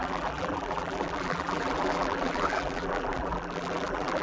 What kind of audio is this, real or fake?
fake